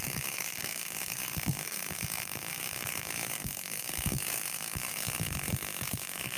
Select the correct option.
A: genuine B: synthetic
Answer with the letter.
B